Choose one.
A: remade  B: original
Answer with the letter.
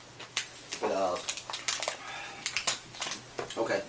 B